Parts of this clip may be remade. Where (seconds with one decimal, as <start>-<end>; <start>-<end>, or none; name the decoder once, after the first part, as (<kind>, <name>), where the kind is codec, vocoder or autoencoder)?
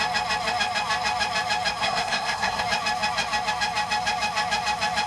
1.8-2.6 (codec, SNAC)